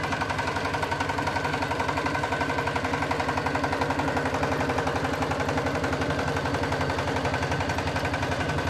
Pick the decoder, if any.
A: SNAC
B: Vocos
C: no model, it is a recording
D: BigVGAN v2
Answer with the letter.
C